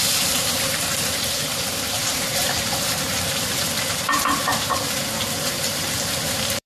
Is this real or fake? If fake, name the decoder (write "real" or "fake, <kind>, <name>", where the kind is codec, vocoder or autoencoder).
fake, vocoder, BigVGAN v2